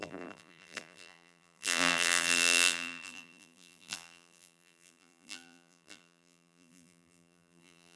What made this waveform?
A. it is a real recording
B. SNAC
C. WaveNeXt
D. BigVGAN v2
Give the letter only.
D